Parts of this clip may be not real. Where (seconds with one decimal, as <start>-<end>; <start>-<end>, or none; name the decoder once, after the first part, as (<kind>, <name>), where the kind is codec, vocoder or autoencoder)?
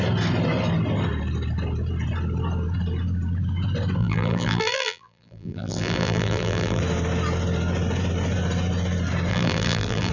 4.0-6.8 (vocoder, BigVGAN v2); 9.3-10.1